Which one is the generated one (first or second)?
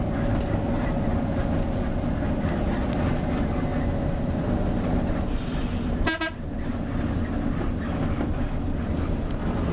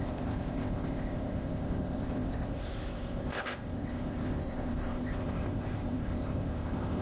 second